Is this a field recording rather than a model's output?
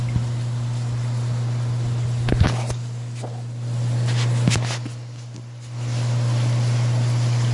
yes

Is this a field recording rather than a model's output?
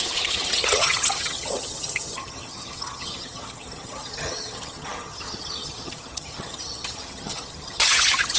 no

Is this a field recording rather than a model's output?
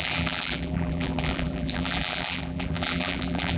no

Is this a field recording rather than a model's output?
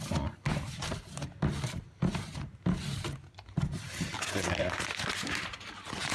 yes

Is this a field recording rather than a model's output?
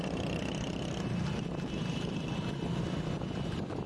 yes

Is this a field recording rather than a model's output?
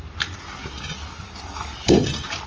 yes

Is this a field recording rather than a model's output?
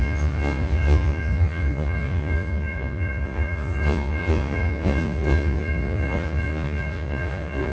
no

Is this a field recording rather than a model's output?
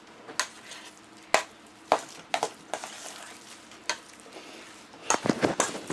yes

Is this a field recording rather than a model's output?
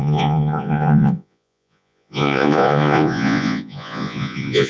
no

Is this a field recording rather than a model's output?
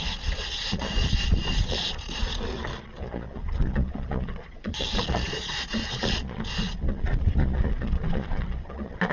no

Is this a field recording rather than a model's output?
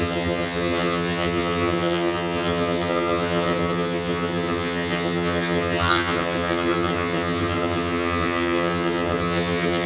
no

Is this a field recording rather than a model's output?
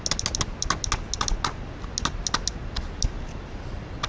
yes